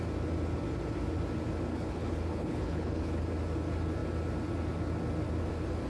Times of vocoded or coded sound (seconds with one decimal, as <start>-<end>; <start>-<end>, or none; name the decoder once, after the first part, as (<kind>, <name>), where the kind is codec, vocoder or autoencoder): 1.7-3.2 (codec, HILCodec)